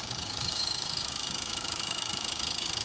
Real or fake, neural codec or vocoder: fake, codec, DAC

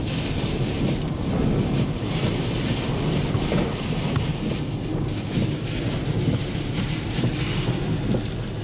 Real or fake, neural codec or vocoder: real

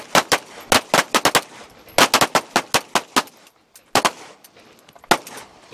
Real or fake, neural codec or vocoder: real